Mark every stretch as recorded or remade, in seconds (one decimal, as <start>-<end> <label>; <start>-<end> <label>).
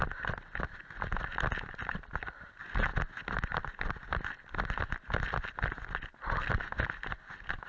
0.0-7.7 recorded